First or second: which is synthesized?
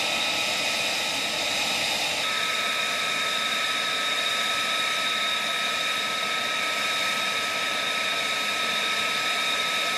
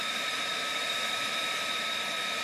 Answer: second